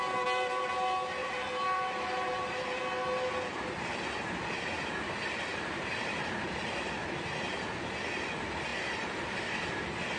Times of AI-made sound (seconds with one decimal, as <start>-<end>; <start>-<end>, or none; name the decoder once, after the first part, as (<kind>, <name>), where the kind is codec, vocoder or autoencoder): 1.2-2.8 (vocoder, BigVGAN v2); 5.5-6.9; 8.7-9.7